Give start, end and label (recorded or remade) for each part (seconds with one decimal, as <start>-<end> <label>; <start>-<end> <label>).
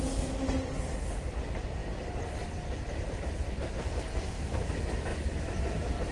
0.0-3.8 recorded; 3.8-4.6 remade; 4.6-6.1 recorded